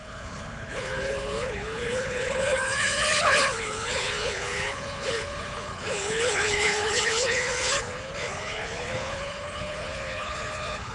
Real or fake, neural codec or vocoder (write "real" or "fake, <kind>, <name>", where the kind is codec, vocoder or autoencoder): fake, codec, HILCodec